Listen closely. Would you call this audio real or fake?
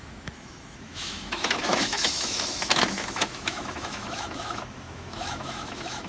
fake